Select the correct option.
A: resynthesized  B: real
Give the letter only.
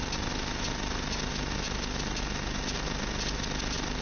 B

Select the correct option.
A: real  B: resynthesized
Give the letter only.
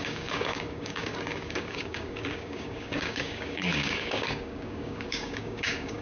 B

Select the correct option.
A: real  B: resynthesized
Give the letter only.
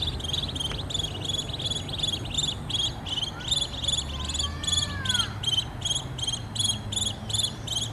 A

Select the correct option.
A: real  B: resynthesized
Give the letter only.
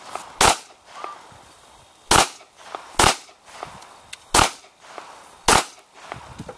A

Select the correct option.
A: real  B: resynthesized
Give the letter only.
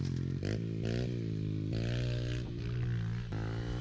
A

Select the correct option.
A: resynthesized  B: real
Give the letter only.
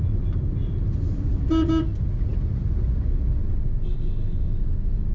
B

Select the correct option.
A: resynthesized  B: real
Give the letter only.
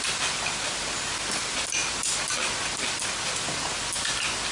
B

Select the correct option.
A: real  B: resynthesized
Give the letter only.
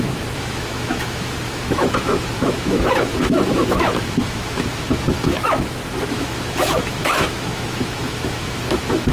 B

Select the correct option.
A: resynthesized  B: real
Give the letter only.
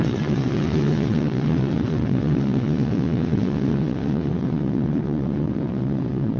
A